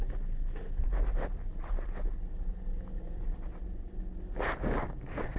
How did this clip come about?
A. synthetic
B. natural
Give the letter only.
B